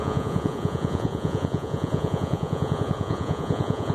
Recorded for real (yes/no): no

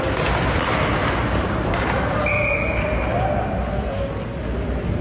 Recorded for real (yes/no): yes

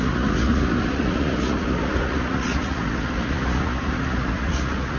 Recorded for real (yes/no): no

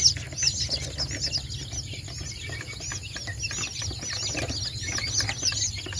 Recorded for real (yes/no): yes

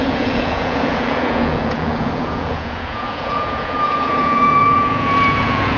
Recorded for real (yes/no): no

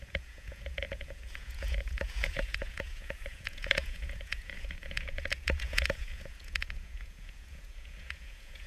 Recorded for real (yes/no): no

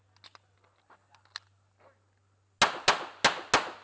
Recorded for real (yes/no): yes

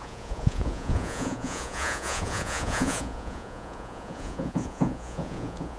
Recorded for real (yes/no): no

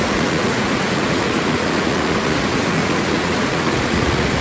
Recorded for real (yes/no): no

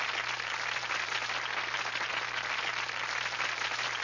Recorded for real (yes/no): yes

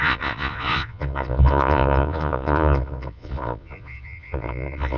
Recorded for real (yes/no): no